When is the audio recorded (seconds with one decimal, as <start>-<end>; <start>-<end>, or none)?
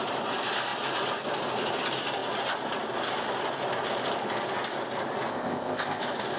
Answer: 0.0-5.3; 6.0-6.4